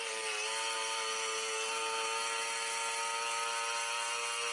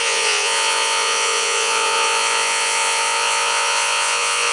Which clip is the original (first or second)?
first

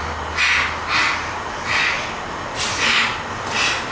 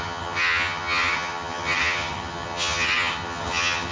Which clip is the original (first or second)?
first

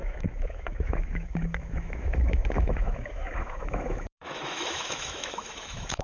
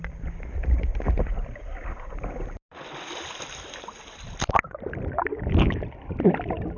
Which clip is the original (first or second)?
second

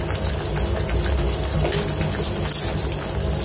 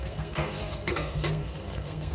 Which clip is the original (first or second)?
first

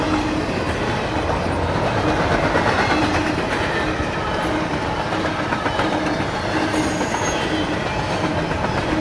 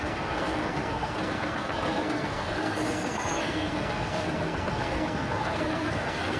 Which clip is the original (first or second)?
first